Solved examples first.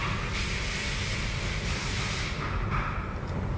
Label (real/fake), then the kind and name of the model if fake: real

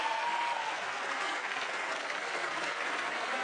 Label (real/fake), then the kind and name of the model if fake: fake, codec, SNAC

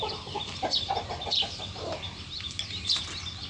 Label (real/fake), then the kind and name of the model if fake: real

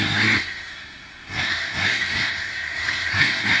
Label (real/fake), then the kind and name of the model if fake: fake, codec, SNAC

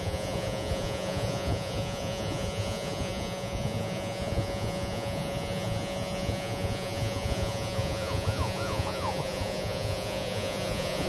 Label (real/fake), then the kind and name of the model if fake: fake, vocoder, Vocos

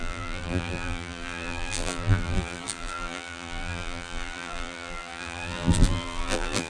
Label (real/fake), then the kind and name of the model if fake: fake, vocoder, BigVGAN v2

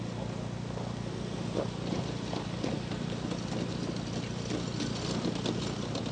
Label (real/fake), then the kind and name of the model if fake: real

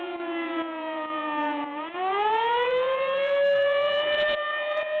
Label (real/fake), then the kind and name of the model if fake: fake, vocoder, Vocos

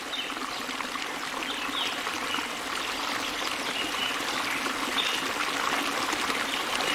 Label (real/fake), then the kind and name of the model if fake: real